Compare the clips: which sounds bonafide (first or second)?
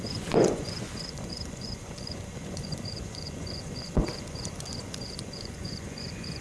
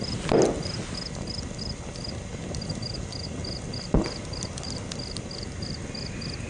second